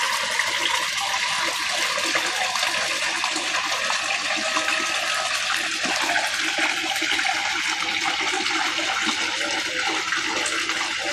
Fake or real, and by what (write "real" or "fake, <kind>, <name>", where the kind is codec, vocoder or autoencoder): real